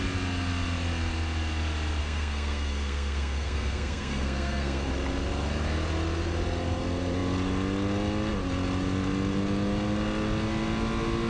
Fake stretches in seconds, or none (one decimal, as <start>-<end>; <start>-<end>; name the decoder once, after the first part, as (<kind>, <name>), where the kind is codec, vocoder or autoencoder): 2.0-4.9 (codec, SNAC)